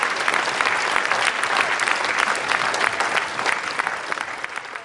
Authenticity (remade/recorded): recorded